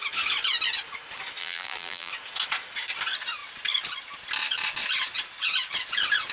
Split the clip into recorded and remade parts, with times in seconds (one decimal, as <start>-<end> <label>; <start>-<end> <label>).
0.0-1.4 recorded; 1.4-2.1 remade; 2.1-6.3 recorded